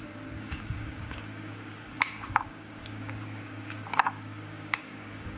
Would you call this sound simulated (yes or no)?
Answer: yes